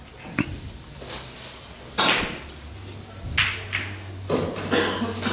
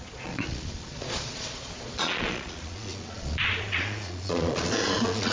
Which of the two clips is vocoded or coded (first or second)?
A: second